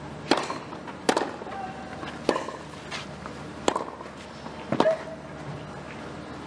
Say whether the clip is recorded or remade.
recorded